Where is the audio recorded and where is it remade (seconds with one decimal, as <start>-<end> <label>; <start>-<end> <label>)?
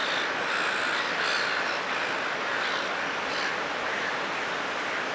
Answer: 0.0-5.1 recorded